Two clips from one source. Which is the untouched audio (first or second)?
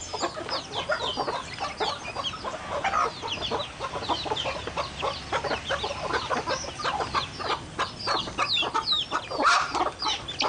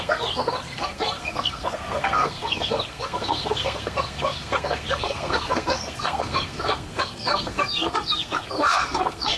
first